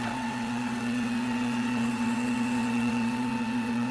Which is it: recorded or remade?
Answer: remade